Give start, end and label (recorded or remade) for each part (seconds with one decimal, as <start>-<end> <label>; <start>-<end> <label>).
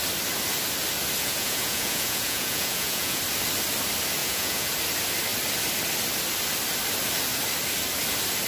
0.0-1.2 recorded; 1.2-3.2 remade; 3.2-4.2 recorded; 4.2-4.7 remade; 4.7-8.5 recorded